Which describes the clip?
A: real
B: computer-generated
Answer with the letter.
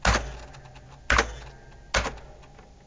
A